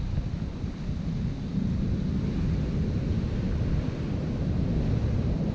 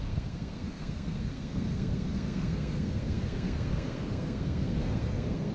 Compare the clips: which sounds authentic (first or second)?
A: first